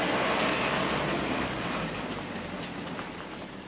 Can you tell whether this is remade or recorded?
remade